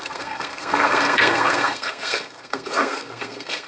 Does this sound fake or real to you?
fake